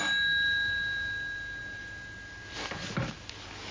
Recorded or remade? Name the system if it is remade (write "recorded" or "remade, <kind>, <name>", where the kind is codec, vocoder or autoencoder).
recorded